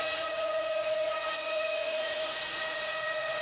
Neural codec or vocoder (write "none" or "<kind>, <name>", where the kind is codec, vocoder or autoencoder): vocoder, Vocos